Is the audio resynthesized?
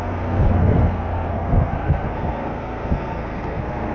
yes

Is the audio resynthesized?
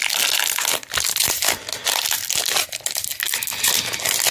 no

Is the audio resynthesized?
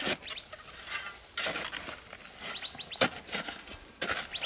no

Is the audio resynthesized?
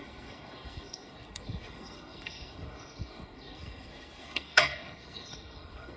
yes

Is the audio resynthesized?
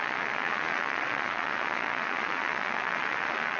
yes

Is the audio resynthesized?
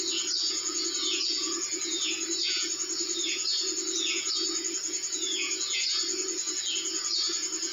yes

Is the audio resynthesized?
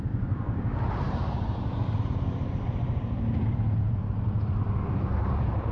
yes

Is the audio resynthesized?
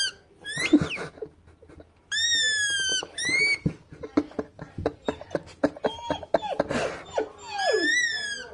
no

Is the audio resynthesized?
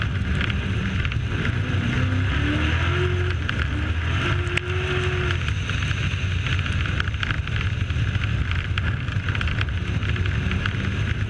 no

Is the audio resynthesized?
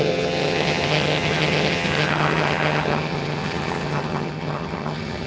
yes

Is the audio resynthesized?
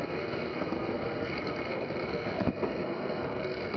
yes